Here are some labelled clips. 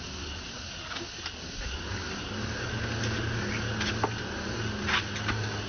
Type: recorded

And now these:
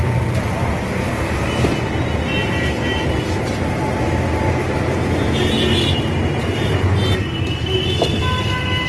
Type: recorded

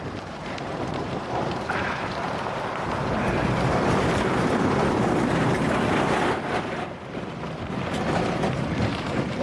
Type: remade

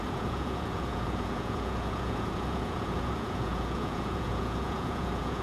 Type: remade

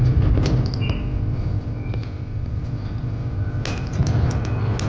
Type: recorded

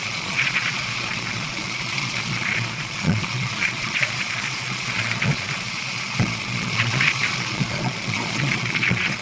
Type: remade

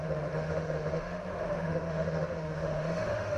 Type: remade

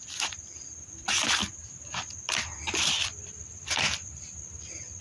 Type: recorded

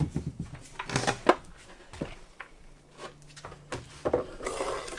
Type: recorded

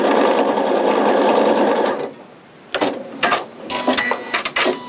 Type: recorded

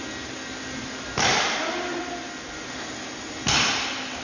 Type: recorded